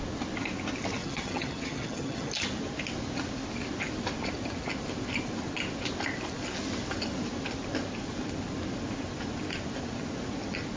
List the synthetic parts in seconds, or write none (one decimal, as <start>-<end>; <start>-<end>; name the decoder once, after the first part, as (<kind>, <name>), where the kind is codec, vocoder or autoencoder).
1.0-2.3 (vocoder, HiFi-GAN)